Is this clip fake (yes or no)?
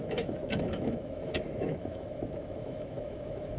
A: yes